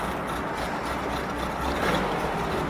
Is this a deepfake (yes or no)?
no